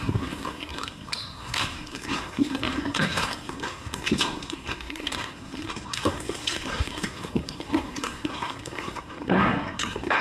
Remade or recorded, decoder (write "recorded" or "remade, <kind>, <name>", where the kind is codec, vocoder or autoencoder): remade, codec, SNAC